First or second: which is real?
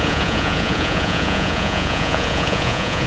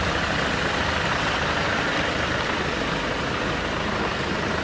second